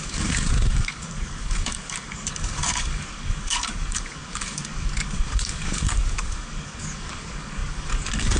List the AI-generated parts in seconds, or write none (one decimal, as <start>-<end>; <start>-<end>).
0.0-8.4